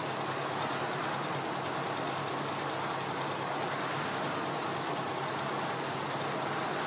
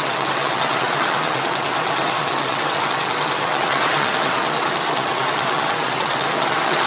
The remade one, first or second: second